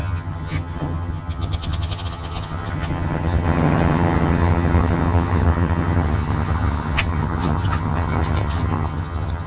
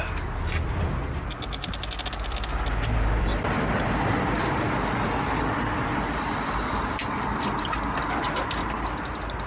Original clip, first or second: second